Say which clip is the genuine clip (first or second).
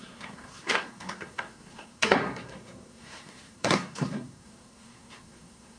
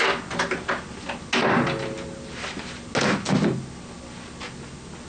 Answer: second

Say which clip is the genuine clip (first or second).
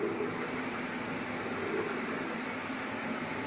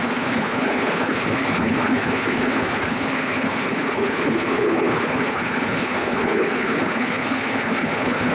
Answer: first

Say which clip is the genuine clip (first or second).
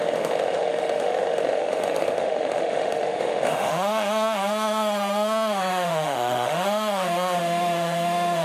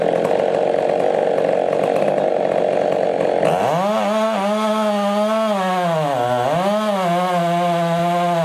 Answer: second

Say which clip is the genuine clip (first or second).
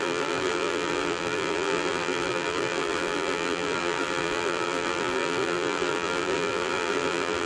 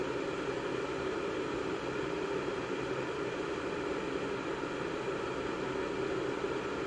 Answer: second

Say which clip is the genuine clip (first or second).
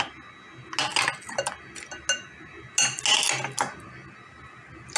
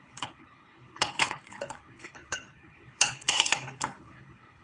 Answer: first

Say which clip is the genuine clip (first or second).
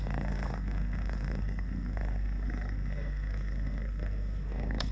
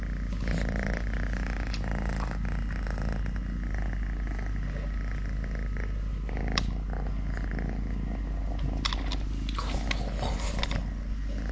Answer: second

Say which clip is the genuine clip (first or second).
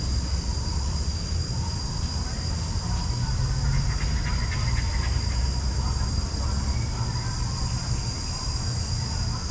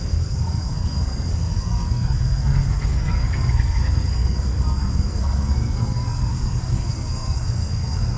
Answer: first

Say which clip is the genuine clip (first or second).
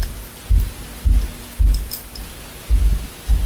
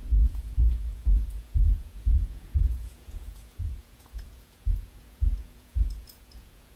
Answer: first